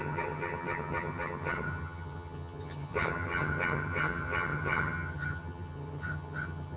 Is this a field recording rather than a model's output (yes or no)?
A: no